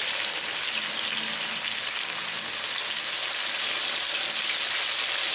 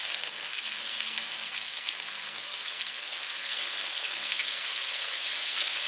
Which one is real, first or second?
first